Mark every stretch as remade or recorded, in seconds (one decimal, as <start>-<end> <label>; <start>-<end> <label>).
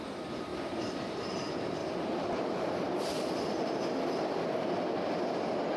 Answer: 0.0-0.5 recorded; 0.5-1.0 remade; 1.0-1.8 recorded; 1.8-4.0 remade; 4.0-5.8 recorded